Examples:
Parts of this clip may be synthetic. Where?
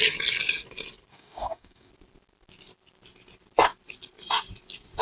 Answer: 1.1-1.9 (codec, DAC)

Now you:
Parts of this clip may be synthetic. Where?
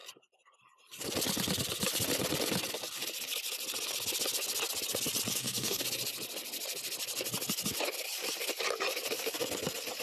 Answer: 5.3-5.8 (codec, DAC)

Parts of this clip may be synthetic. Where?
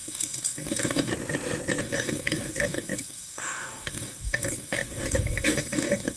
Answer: 0.0-1.1 (codec, DAC); 1.8-6.2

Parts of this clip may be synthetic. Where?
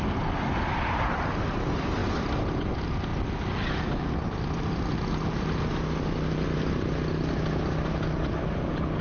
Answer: none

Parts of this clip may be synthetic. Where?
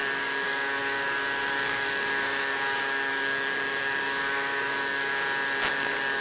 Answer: 0.0-5.1 (codec, DAC); 5.7-6.2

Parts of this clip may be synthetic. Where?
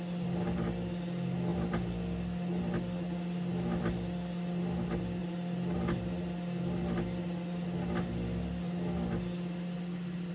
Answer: none